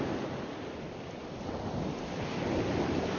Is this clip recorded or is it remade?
recorded